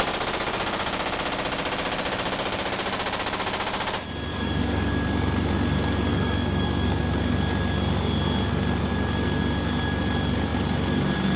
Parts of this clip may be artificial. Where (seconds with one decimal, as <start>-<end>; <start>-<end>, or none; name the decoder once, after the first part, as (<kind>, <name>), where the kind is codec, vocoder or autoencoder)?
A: 4.3-4.9 (codec, DAC); 6.1-7.0